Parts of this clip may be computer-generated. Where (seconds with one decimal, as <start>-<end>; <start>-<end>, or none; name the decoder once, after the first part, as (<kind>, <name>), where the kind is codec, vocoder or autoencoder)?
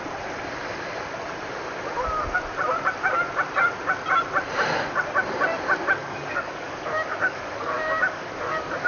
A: 6.0-8.9 (codec, DAC)